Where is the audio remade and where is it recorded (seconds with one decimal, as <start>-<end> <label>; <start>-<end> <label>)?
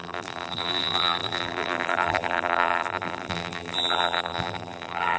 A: 0.0-5.2 remade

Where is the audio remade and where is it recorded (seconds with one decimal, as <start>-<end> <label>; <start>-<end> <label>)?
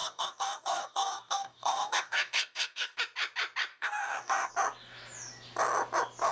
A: 0.0-3.0 remade; 3.0-3.7 recorded; 3.7-4.5 remade; 4.5-6.3 recorded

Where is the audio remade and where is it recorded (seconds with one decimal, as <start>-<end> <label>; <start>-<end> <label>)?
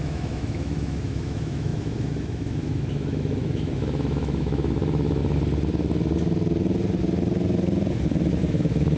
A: 0.0-5.2 remade; 5.2-8.3 recorded; 8.3-9.0 remade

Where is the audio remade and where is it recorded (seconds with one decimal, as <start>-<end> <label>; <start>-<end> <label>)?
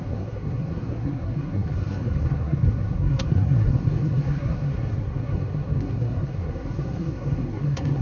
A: 0.0-8.0 remade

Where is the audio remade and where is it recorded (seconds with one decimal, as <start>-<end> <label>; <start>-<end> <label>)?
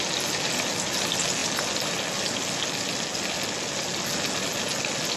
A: 0.0-5.2 recorded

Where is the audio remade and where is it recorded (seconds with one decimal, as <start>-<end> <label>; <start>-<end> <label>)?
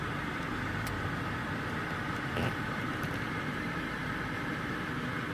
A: 0.0-5.3 remade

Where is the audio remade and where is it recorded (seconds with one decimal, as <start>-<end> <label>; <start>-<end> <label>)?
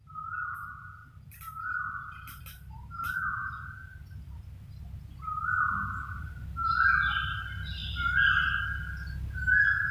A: 0.0-9.9 recorded